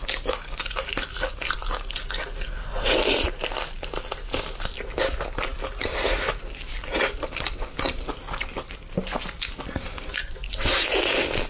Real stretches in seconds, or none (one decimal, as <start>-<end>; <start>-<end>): 0.0-11.5